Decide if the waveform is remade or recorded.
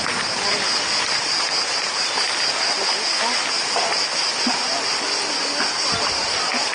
recorded